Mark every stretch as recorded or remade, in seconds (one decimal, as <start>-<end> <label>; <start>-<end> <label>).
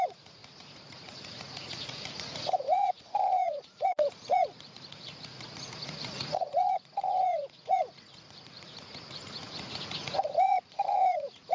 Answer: 0.0-11.5 remade